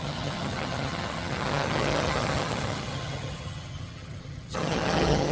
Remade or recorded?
remade